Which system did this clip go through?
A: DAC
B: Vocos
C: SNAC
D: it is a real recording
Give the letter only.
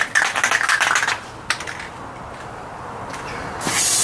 D